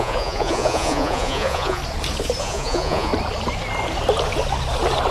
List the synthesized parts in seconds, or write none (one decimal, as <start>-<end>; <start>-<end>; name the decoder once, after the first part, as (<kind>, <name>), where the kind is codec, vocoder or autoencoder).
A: 0.0-1.8 (vocoder, Vocos); 2.4-3.1